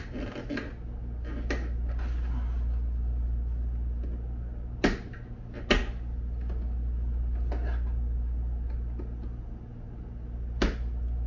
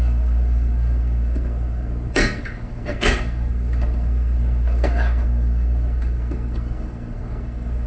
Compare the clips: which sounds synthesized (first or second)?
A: second